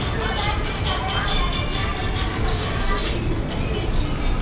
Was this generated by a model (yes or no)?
no